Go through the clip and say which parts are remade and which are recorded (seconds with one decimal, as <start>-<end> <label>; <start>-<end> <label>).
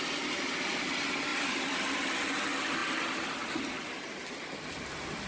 0.0-5.3 recorded